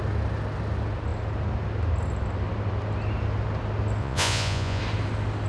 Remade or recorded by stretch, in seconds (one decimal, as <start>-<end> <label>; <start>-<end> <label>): 0.0-4.0 recorded; 4.0-4.8 remade; 4.8-5.5 recorded